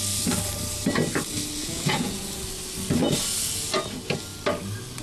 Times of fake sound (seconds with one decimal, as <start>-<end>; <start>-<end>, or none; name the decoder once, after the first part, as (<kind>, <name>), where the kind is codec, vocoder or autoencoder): 1.6-2.4 (vocoder, Vocos)